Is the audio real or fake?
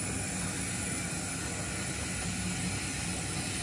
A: real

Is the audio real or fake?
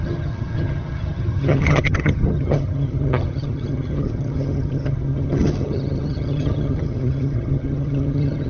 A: fake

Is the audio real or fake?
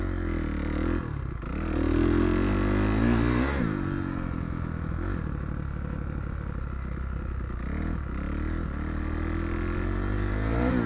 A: real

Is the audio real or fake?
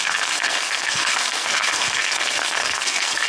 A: fake